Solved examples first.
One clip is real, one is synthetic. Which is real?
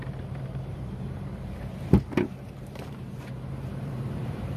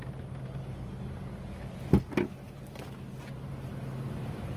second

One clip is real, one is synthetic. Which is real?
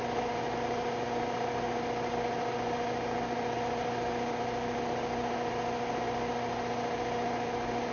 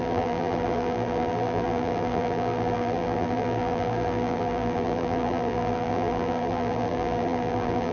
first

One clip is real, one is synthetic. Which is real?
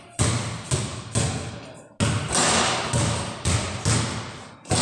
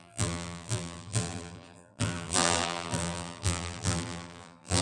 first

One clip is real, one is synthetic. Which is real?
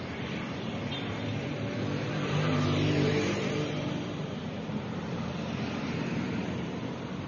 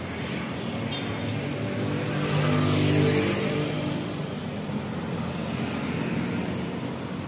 second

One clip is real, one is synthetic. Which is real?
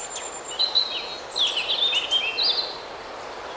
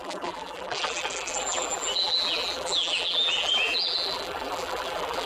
first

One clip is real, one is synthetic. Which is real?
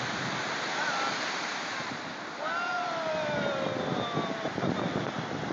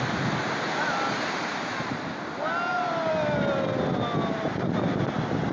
second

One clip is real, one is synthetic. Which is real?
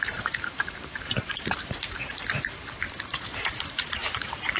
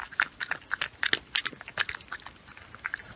second